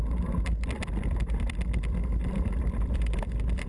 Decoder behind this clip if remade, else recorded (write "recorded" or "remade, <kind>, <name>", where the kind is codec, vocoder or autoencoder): recorded